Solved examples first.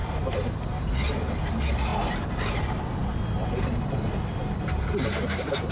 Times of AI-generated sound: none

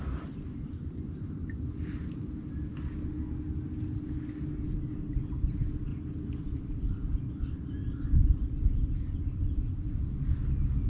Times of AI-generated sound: none

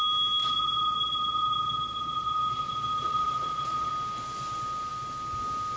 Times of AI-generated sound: 0.4-3.9 (vocoder, Vocos)

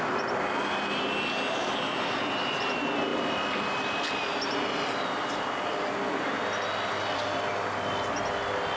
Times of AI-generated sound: none